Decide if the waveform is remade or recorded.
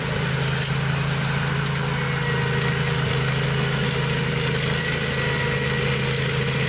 recorded